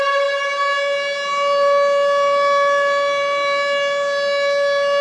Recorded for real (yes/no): yes